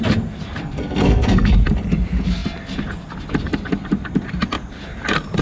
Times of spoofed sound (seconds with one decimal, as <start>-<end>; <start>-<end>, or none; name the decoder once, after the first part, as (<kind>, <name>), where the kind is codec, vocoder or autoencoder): 0.6-1.5 (codec, SNAC)